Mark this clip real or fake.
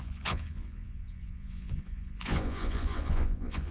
fake